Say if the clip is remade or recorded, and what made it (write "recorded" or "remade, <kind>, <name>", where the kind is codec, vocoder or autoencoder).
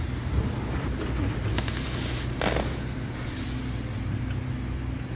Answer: recorded